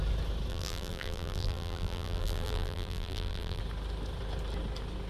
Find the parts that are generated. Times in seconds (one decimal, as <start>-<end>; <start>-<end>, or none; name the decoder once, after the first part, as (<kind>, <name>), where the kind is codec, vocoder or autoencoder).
0.5-3.6 (vocoder, BigVGAN v2)